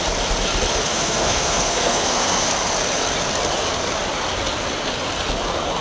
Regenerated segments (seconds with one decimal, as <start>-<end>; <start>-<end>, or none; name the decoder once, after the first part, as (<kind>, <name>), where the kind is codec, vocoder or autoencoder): 0.9-2.5 (codec, SNAC)